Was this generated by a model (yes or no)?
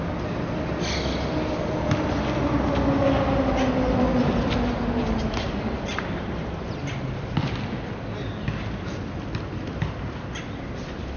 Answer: no